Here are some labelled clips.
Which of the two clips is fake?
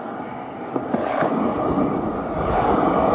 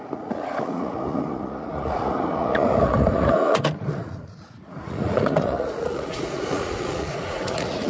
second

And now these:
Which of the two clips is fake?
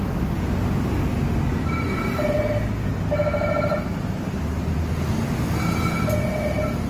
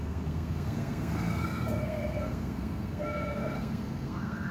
second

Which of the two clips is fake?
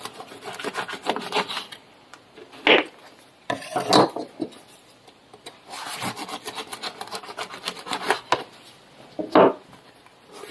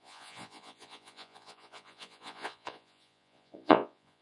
second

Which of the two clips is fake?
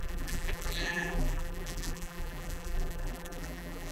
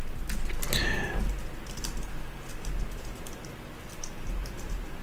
first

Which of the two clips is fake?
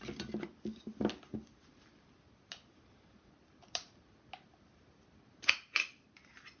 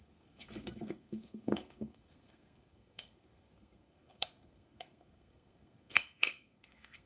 second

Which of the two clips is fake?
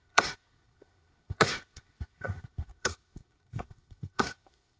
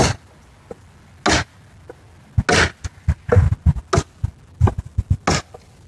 first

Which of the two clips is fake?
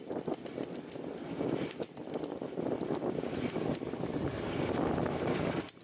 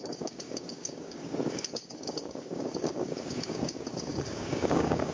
second